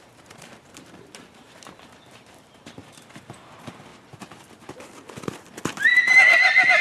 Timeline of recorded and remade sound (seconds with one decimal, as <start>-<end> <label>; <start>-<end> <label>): 0.0-3.9 remade; 3.9-6.8 recorded